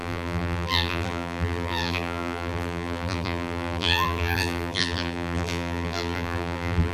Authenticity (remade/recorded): remade